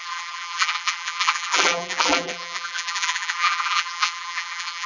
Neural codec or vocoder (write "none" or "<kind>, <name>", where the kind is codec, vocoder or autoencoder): vocoder, BigVGAN v2